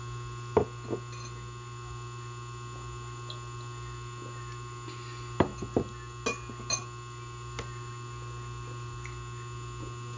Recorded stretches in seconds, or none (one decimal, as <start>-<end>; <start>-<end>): 0.0-10.2